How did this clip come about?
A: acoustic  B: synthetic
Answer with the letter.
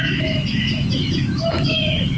B